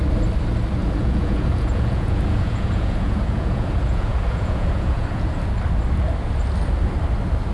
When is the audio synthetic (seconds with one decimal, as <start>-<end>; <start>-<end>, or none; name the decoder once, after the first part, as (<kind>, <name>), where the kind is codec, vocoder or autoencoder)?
0.8-5.3 (vocoder, Vocos)